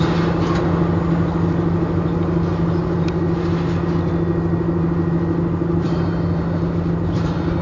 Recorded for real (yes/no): yes